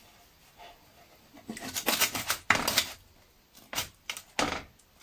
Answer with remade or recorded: recorded